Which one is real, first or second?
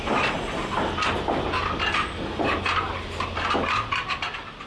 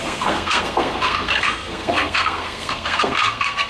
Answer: first